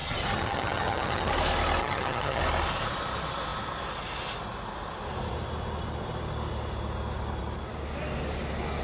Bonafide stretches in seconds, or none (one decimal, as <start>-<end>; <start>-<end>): 1.3-1.8; 2.4-8.8